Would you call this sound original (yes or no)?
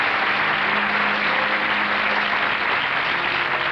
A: yes